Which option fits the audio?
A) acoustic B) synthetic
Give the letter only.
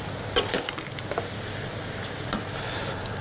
A